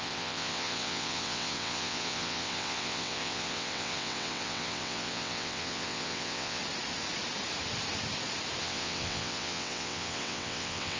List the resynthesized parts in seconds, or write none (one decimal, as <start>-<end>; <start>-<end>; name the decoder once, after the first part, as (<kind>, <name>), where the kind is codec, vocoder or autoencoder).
0.0-6.6 (vocoder, WaveNeXt); 8.6-11.0